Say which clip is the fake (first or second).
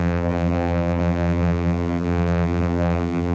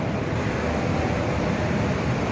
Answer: first